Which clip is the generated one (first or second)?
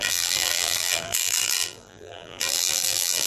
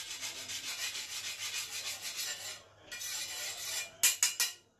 first